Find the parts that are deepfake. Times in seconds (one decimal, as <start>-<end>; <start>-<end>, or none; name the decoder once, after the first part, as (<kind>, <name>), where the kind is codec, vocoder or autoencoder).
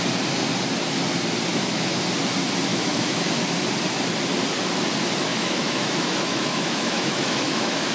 1.5-2.0 (autoencoder, DAC-VAE); 2.7-3.3; 5.3-7.9